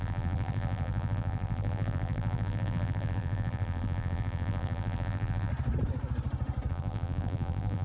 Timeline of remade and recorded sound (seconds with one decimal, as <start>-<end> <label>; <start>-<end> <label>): 0.0-5.5 remade; 5.5-6.7 recorded; 6.7-7.8 remade